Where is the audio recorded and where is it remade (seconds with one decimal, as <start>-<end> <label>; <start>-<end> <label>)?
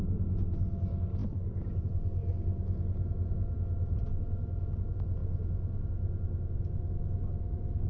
0.0-7.9 recorded